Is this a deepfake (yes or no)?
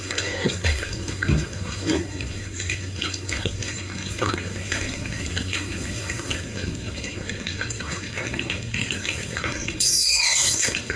yes